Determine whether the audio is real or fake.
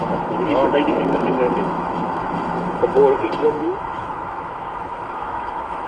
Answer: fake